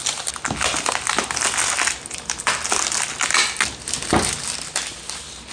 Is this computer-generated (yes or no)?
no